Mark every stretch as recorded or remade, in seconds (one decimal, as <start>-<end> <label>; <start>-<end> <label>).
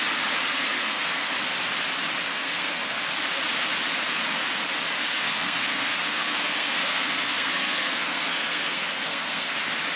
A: 0.0-0.4 recorded; 0.4-1.3 remade; 1.3-2.3 recorded; 2.3-3.0 remade; 3.0-5.1 recorded; 5.1-9.5 remade; 9.5-10.0 recorded